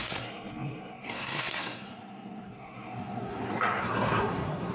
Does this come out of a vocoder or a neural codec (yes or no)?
yes